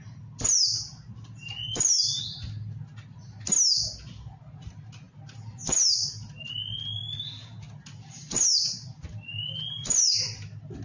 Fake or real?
real